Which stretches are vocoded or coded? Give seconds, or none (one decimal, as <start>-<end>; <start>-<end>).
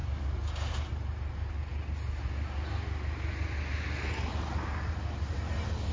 none